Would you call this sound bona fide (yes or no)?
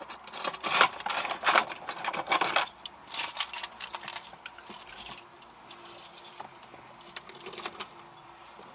yes